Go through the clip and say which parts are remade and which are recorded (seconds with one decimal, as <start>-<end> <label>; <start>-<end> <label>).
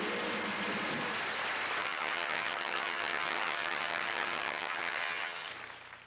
0.0-1.8 recorded; 1.8-5.5 remade; 5.5-6.1 recorded